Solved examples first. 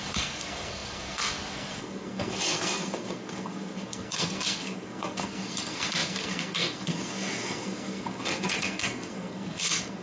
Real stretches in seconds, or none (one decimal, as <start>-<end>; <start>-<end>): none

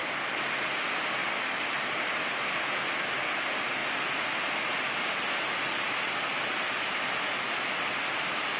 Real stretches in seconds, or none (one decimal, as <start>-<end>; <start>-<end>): 0.0-8.6

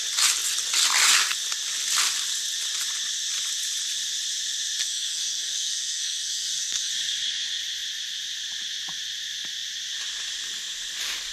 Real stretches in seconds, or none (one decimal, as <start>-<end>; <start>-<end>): 0.0-4.8; 6.9-11.3

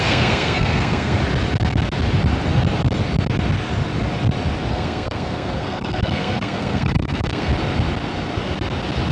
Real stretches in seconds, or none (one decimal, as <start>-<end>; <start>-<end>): 1.2-4.7; 7.5-9.1